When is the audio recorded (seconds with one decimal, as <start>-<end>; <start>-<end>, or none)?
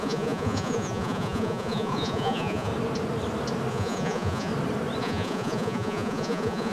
2.7-3.7; 4.5-5.0